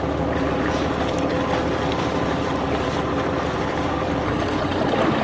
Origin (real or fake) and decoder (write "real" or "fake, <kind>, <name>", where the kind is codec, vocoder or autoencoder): fake, vocoder, BigVGAN v2